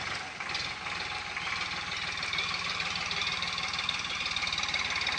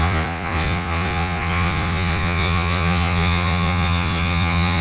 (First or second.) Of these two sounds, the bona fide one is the first